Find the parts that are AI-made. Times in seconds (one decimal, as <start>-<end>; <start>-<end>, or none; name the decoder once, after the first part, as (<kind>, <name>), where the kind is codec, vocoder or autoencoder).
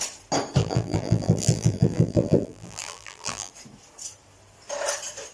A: 0.6-3.5 (vocoder, BigVGAN v2)